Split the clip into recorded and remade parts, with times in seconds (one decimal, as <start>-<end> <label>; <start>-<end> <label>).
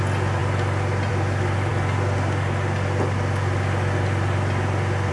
0.0-5.1 recorded